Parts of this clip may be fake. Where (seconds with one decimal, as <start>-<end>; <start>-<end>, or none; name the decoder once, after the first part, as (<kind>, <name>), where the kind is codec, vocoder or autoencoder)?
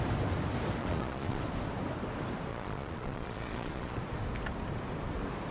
0.8-1.4 (vocoder, Vocos); 2.5-4.0